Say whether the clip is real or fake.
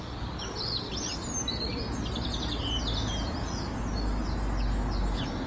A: real